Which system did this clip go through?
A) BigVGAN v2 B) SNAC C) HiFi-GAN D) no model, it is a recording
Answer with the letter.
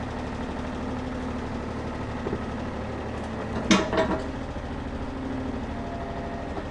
D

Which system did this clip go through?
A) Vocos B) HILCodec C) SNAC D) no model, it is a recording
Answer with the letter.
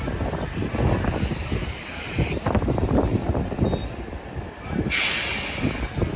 D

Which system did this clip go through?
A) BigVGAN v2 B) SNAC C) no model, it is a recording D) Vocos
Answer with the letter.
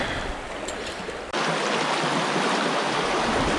C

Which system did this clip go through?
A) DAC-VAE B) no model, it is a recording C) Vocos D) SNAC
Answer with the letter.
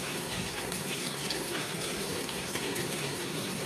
D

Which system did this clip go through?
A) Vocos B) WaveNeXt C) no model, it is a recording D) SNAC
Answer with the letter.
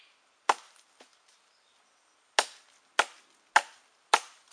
C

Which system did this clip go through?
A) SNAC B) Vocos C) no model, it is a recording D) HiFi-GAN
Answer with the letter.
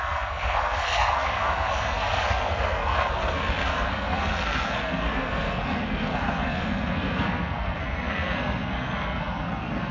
A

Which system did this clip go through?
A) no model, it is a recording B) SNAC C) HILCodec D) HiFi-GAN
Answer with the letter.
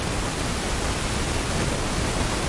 A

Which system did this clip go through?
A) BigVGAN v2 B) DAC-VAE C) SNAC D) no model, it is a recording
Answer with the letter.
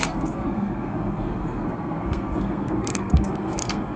C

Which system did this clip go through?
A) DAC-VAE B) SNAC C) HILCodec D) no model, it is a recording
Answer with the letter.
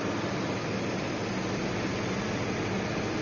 D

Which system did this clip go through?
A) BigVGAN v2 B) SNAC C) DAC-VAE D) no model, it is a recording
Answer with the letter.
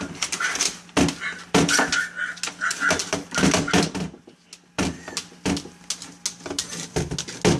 D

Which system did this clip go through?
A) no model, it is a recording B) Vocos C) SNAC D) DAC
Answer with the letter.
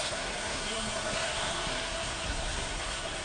C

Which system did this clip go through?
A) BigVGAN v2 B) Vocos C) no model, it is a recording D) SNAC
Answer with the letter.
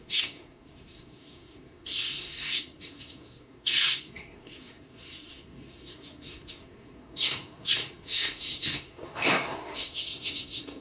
D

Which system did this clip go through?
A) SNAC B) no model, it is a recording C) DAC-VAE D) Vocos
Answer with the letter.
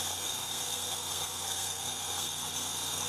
A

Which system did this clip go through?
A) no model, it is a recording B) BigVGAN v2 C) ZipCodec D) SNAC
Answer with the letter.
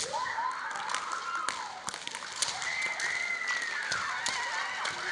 A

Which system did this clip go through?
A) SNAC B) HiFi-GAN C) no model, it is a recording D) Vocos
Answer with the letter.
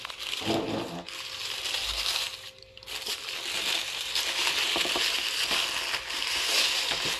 C